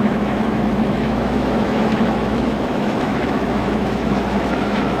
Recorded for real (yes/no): no